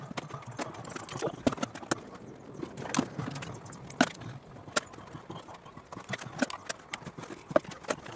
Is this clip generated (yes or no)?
no